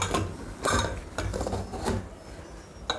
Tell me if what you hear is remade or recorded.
recorded